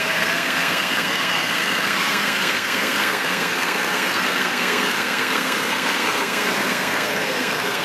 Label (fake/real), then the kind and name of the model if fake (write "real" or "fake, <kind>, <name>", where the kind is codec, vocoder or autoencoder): fake, codec, SNAC